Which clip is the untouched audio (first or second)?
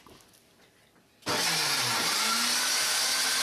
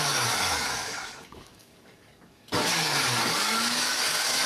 first